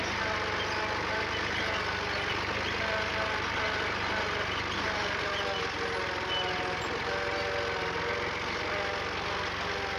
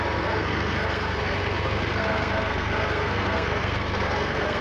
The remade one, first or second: second